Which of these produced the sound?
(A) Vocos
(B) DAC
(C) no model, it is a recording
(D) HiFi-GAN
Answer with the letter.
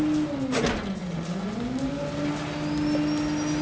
C